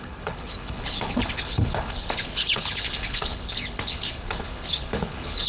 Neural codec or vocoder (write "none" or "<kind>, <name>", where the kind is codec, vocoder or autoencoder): codec, HILCodec